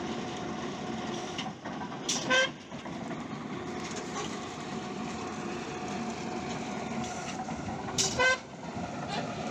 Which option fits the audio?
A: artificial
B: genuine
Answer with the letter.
B